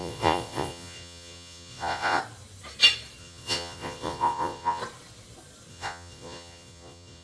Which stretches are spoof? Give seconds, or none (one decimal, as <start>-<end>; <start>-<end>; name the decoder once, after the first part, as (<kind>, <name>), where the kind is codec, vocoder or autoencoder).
0.0-2.2 (vocoder, Vocos); 3.2-4.8; 5.7-7.2